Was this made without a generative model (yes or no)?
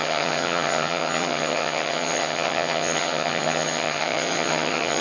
no